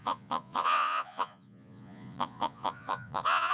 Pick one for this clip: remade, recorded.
remade